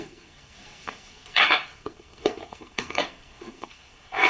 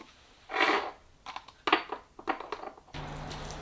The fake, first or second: first